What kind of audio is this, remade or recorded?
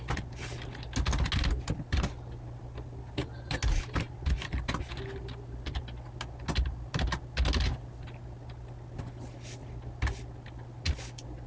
recorded